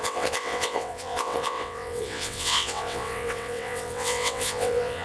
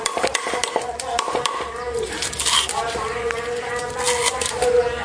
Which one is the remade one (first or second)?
first